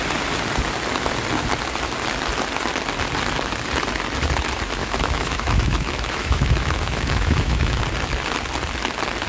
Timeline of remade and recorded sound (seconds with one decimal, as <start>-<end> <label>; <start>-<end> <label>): 0.0-4.8 recorded; 4.8-7.8 remade; 7.8-9.3 recorded